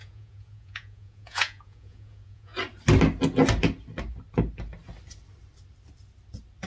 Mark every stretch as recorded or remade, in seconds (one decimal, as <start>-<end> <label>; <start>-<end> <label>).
0.0-2.5 remade; 2.5-6.7 recorded